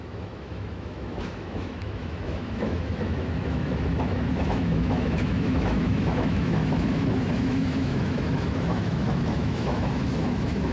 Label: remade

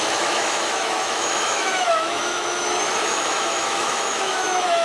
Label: remade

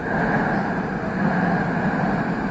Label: recorded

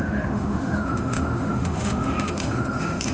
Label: remade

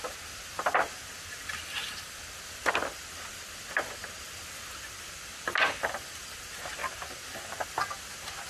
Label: recorded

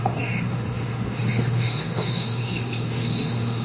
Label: remade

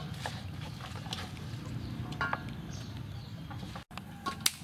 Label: recorded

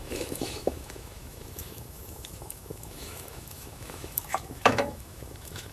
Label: remade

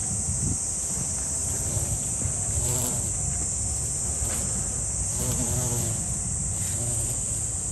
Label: recorded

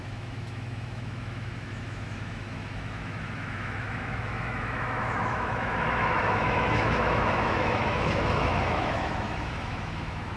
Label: remade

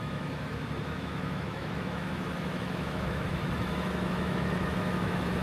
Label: remade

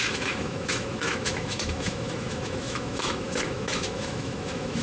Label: remade